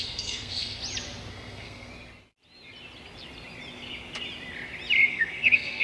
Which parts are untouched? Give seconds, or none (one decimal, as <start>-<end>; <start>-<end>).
0.8-1.3; 1.9-5.1